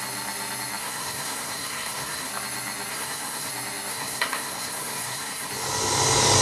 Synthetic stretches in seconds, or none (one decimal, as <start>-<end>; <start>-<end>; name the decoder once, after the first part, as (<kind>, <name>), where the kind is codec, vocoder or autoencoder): 0.8-2.3 (codec, SNAC); 2.9-3.5; 3.9-5.5